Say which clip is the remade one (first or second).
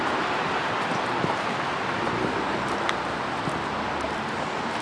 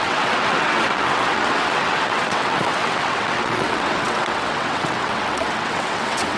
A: second